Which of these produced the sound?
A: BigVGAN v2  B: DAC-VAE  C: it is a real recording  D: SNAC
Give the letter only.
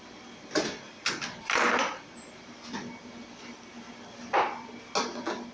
C